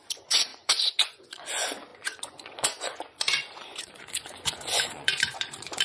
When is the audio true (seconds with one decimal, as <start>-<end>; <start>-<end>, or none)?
none